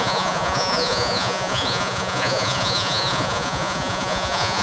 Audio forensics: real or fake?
fake